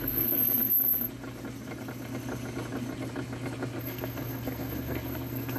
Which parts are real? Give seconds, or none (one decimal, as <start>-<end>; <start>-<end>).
0.4-3.8